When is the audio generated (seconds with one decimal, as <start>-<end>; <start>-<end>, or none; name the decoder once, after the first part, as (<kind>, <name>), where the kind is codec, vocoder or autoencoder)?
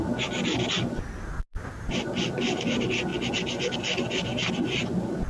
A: none